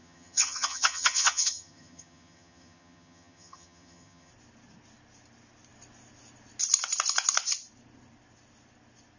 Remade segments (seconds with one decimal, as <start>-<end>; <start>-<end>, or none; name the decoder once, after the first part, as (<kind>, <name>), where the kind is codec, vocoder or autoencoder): 0.0-4.3 (vocoder, HiFi-GAN)